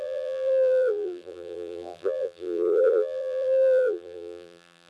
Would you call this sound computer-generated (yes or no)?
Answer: yes